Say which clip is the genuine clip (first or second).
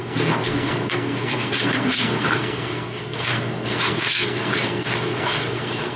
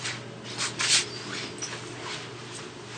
second